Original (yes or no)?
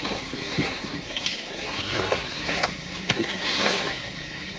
no